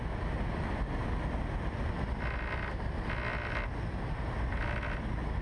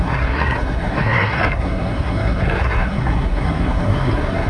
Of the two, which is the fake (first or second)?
second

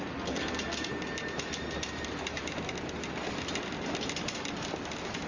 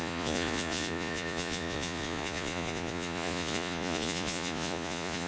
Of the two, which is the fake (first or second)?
second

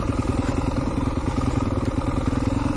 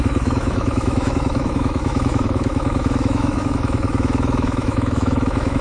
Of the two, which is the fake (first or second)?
second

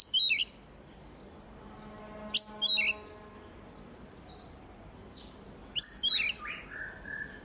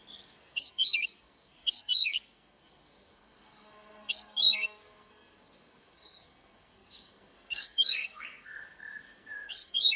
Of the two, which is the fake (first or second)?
second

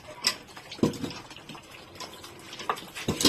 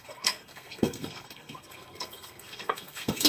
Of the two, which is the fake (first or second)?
second